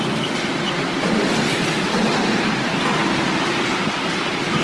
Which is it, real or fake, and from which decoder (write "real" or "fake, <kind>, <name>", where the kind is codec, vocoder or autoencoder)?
real